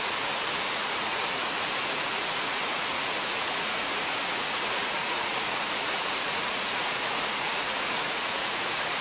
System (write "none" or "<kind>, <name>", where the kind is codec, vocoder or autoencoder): vocoder, Vocos